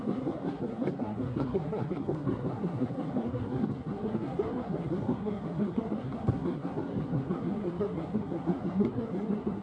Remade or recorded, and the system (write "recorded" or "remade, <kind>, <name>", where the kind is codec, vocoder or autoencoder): remade, codec, SNAC